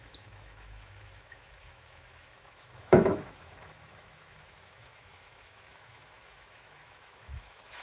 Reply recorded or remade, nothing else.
remade